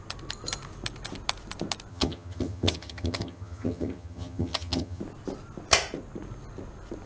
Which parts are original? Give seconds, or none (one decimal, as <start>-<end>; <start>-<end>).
0.0-1.9; 5.0-7.1

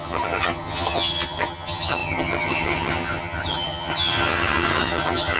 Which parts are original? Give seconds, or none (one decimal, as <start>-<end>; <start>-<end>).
none